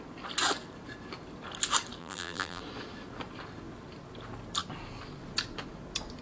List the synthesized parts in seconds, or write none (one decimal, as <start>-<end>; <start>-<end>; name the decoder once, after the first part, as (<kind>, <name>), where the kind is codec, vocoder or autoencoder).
2.0-2.6 (vocoder, BigVGAN v2)